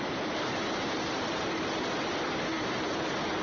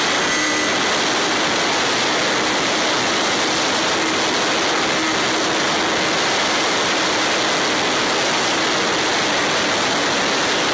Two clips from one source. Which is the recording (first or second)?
second